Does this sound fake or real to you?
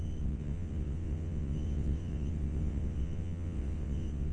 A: fake